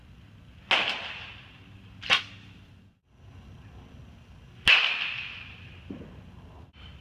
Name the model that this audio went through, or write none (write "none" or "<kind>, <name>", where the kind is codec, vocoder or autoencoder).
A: none